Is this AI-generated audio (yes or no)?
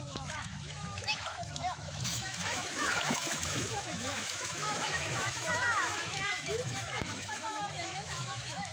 yes